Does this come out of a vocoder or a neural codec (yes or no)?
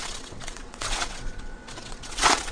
yes